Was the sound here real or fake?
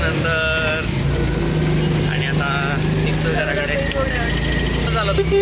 real